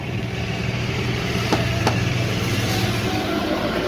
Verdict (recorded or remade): remade